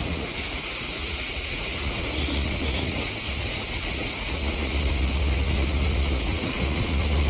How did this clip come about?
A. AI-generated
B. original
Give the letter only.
A